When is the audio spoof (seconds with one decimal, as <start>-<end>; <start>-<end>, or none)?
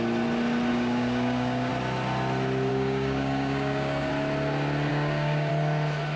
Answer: 0.7-1.7; 2.7-4.1; 4.9-5.5